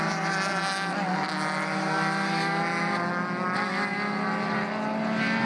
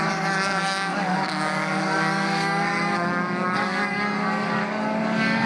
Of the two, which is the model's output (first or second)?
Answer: second